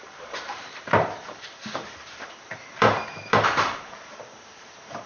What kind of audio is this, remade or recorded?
remade